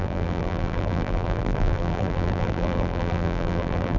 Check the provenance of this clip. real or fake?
fake